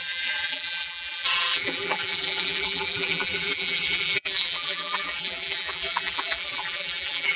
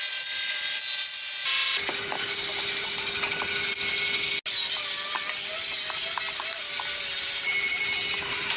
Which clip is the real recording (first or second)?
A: second